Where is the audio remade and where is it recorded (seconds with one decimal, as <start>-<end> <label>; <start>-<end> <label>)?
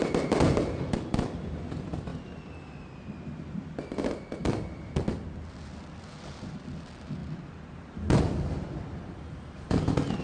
0.0-2.1 remade; 2.1-3.1 recorded; 3.1-10.2 remade